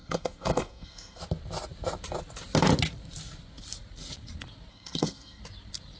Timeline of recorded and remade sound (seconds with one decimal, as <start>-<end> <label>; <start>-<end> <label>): 0.0-1.2 remade; 1.2-4.7 recorded; 4.7-5.4 remade; 5.4-6.0 recorded